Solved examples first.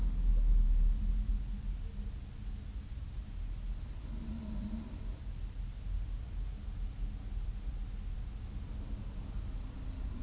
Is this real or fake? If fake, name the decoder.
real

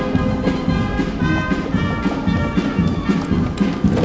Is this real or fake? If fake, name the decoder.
real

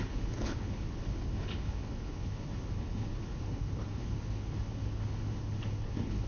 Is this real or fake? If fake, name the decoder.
fake, codec, HILCodec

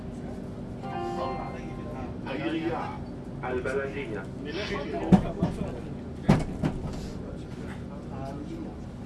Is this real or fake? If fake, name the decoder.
real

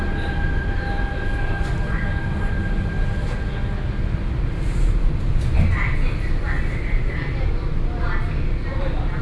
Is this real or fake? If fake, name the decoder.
real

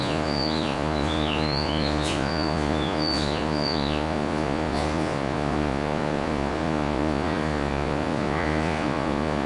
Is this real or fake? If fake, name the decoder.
fake, vocoder, Vocos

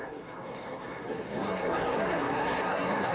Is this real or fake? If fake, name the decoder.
fake, codec, SNAC